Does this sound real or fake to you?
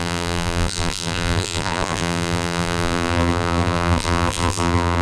fake